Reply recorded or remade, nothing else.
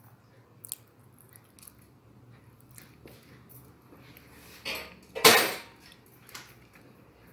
recorded